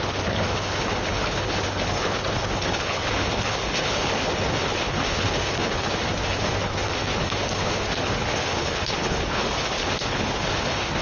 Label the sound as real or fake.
fake